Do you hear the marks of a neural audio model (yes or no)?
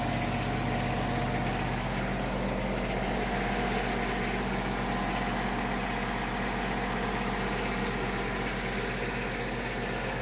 no